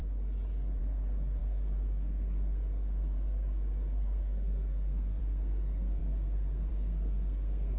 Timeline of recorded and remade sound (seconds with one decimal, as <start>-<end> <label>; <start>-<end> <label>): 0.0-0.8 recorded; 0.8-7.8 remade